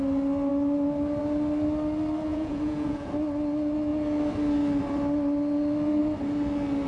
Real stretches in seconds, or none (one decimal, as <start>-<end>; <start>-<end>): 0.0-2.3; 3.1-6.9